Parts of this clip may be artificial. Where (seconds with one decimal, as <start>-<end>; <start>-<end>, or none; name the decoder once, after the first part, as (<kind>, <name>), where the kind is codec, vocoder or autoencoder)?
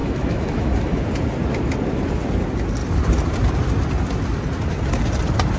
0.0-1.0 (autoencoder, DAC-VAE)